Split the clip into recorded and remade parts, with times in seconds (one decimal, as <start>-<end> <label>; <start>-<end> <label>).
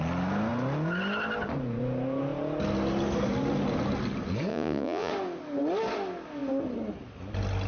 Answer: 0.0-4.5 recorded; 4.5-5.1 remade; 5.1-7.7 recorded